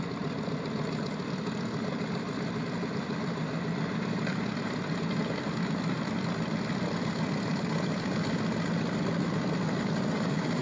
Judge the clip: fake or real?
real